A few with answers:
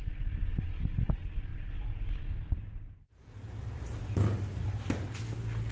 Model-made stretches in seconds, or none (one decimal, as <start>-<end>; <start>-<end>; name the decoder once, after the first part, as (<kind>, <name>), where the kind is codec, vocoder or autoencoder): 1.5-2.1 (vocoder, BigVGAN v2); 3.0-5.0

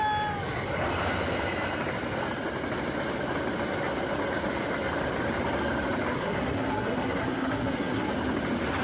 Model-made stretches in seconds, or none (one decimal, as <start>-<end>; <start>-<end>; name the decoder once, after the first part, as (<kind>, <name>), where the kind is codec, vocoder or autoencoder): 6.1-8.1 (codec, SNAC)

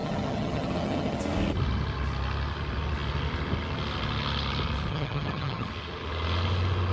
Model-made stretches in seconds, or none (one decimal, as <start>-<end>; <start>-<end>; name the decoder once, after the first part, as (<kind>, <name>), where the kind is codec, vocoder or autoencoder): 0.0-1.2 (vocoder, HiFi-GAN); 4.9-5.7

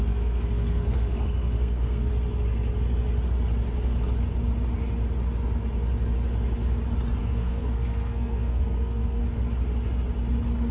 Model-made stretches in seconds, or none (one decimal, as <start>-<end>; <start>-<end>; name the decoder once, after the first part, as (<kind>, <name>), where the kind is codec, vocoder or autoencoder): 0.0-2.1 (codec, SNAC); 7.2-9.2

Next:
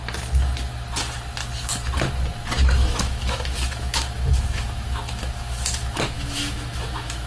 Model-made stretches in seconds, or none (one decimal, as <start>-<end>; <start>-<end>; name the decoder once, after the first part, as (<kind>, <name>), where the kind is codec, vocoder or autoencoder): 2.8-7.3 (autoencoder, DAC-VAE)

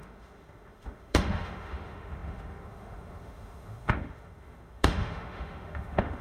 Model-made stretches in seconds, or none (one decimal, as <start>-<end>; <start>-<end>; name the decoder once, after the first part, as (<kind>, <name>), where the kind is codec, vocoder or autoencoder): 0.0-6.2 (autoencoder, DAC-VAE)

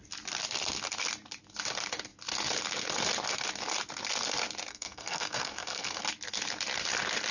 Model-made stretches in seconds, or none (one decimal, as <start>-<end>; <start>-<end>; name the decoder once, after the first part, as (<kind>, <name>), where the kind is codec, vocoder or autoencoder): 4.7-6.0 (codec, SNAC)

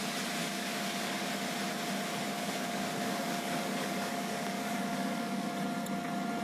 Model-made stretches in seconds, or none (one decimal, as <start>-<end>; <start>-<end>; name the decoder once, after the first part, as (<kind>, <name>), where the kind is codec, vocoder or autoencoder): 0.4-1.3 (codec, DAC); 2.3-5.5